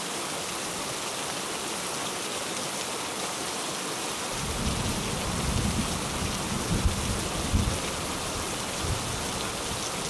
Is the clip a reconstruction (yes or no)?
no